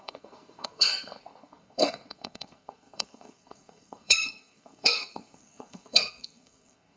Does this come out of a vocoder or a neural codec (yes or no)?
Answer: yes